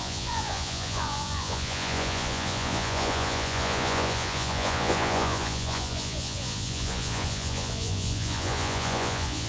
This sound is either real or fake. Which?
fake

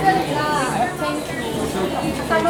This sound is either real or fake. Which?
real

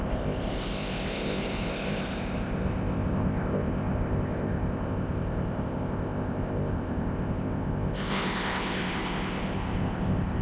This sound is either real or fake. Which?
fake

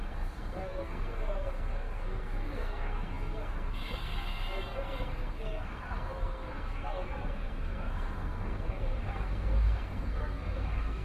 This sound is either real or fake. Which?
fake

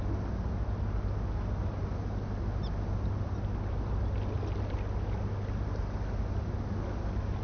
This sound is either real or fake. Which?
real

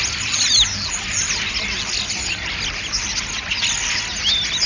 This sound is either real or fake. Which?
real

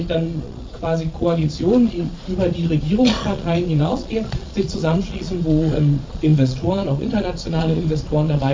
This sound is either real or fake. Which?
fake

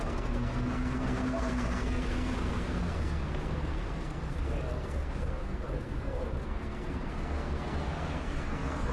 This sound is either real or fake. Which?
fake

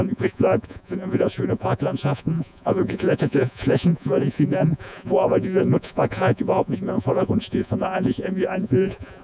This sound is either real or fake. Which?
fake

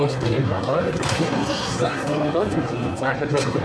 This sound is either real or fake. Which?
fake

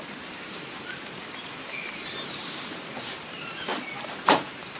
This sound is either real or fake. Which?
fake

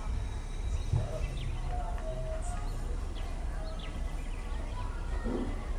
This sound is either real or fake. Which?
real